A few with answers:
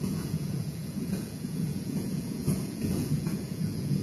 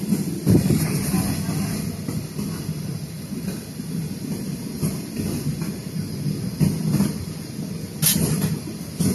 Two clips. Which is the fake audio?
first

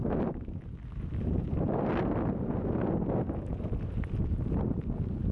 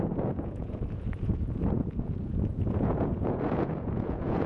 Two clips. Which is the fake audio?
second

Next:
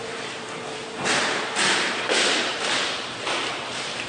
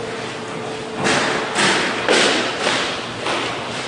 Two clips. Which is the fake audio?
first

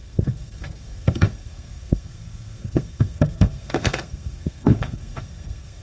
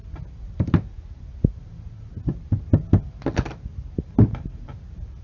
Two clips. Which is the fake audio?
first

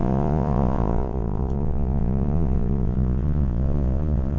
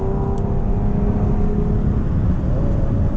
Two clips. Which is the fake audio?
first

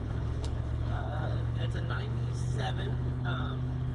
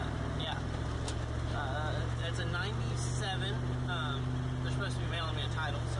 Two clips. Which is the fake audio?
first